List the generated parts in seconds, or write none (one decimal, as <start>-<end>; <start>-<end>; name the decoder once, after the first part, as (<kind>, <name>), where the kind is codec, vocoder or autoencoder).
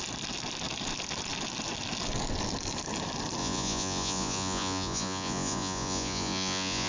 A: 3.4-6.9 (vocoder, Vocos)